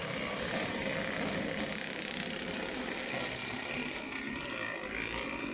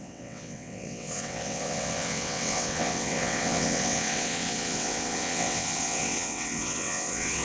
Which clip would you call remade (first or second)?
second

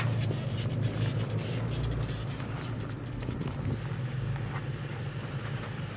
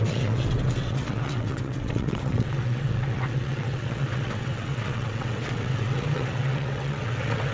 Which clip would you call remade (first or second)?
second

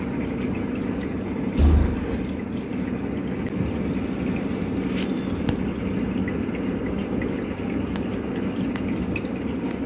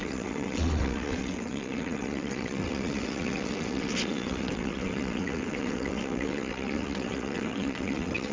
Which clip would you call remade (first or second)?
second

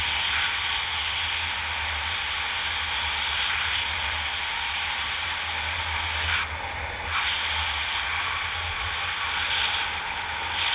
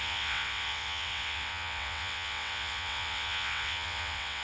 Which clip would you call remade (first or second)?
second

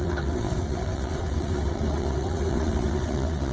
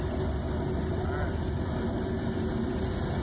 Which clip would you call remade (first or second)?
first